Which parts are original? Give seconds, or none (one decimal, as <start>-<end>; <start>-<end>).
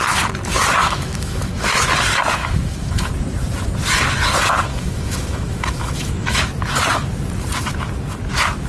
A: 0.0-0.8; 1.9-2.4; 3.1-4.7; 6.4-8.7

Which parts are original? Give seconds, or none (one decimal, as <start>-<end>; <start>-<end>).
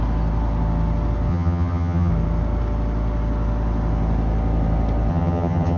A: 0.0-1.3; 2.1-5.1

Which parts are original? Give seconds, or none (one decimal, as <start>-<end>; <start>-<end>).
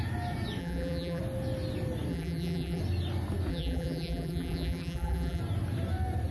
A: 0.0-0.6; 1.2-2.1; 2.8-3.5; 5.4-6.3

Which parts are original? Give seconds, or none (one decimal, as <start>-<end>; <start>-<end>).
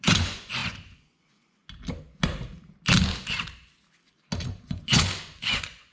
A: 1.6-4.5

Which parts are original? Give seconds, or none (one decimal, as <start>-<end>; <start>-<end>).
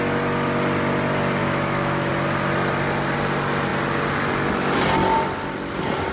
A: 0.0-1.4; 2.1-6.1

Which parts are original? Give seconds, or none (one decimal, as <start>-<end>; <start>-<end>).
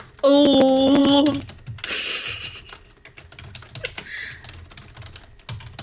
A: 0.0-5.8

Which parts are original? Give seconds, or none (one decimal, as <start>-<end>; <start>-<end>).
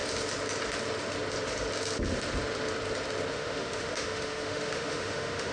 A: 0.0-3.3